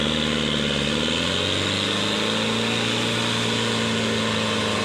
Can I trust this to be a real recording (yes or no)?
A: yes